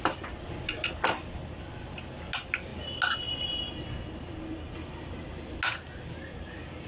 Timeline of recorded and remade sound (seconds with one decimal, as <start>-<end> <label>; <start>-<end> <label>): 0.0-6.9 recorded